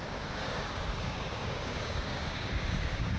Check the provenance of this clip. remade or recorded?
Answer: remade